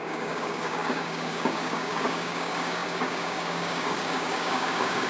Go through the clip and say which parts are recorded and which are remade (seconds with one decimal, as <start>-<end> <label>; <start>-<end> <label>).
0.0-5.1 remade